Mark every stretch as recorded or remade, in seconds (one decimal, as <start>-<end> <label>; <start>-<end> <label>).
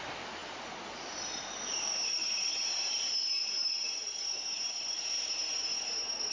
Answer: 0.0-6.3 recorded